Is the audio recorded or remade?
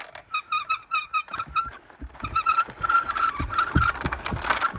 recorded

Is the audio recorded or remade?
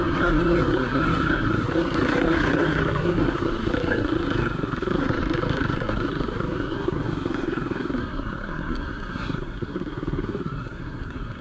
remade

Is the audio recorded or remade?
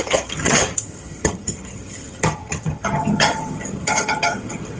remade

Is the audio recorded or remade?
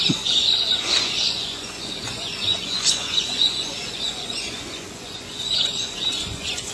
remade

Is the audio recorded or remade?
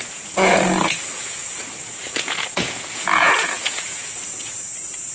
remade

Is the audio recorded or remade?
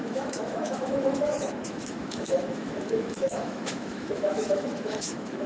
remade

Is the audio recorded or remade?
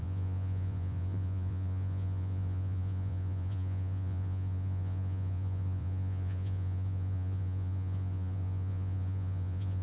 remade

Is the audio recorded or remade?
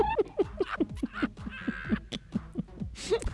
recorded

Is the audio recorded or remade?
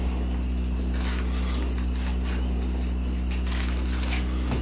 recorded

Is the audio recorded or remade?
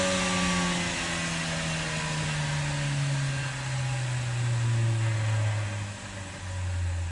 recorded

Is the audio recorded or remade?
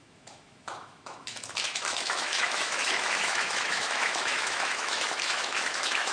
remade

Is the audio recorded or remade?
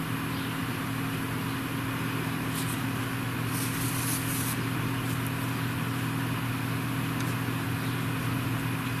recorded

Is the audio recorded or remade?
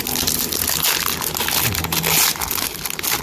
recorded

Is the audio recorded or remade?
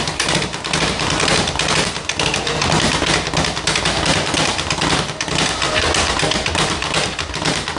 recorded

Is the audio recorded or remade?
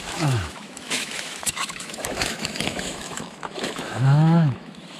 remade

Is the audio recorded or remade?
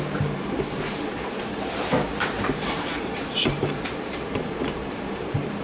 remade